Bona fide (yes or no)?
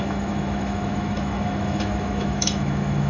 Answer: no